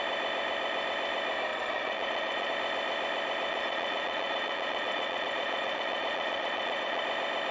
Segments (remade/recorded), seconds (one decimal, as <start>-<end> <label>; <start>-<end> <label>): 0.0-1.5 recorded; 1.5-2.5 remade; 2.5-3.5 recorded; 3.5-7.0 remade; 7.0-7.5 recorded